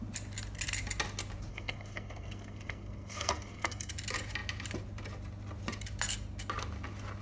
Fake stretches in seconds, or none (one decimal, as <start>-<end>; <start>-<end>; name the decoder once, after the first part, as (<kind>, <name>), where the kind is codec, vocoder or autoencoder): 1.5-3.9 (codec, SNAC)